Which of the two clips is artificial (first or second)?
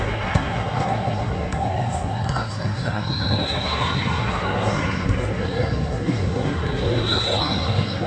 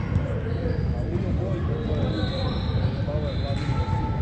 first